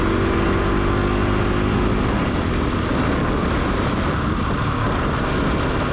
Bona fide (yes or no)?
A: yes